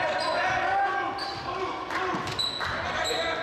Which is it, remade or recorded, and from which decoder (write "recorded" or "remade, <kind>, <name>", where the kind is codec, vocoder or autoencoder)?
recorded